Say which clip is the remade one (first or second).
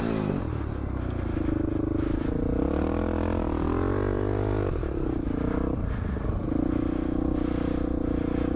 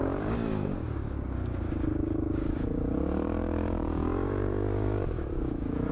second